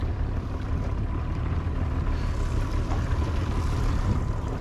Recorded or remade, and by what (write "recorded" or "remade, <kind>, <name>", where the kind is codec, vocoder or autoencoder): recorded